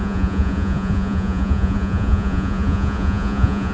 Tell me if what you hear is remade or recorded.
remade